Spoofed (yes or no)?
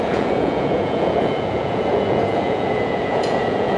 yes